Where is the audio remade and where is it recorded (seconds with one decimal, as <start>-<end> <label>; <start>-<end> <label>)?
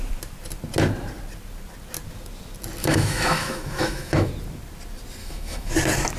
0.0-2.8 recorded; 2.8-4.3 remade; 4.3-5.2 recorded; 5.2-5.7 remade; 5.7-6.2 recorded